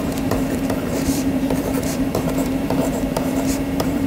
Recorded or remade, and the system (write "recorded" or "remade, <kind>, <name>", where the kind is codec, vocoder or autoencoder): remade, vocoder, BigVGAN v2